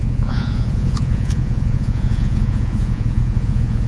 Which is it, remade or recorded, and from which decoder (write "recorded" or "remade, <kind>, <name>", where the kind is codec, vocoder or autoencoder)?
remade, vocoder, Vocos